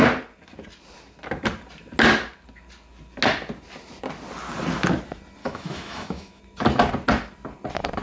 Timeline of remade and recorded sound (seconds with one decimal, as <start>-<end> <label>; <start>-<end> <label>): 0.0-5.4 recorded; 5.4-6.4 remade; 6.4-8.0 recorded

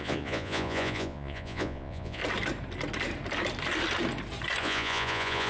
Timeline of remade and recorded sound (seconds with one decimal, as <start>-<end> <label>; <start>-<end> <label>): 0.0-2.2 remade; 2.2-4.6 recorded; 4.6-5.5 remade

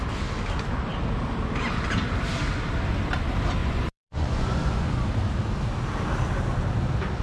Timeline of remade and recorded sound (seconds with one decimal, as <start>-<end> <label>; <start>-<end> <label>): 0.0-3.6 recorded; 3.6-4.9 remade; 4.9-7.2 recorded

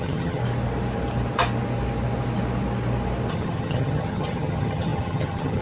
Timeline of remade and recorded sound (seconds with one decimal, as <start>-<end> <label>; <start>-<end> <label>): 0.0-0.4 remade; 0.4-3.3 recorded; 3.3-5.6 remade

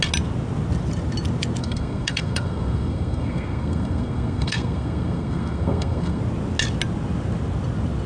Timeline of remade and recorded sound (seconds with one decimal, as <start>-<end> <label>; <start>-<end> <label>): 0.0-1.6 recorded; 1.6-6.2 remade; 6.2-8.1 recorded

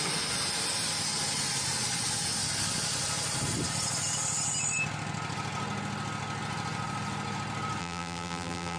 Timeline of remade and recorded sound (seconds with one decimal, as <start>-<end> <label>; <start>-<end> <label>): 0.0-7.8 recorded; 7.8-8.8 remade

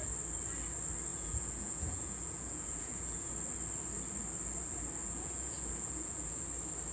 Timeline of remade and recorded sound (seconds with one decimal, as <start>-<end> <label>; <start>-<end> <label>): 0.0-1.1 recorded; 1.1-3.3 remade; 3.3-5.0 recorded; 5.0-6.4 remade; 6.4-6.9 recorded